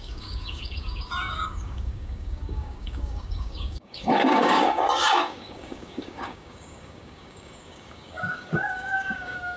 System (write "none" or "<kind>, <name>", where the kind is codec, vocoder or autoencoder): codec, DAC